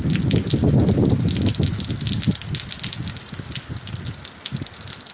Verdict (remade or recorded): recorded